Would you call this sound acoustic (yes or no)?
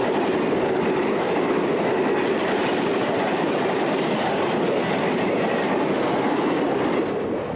yes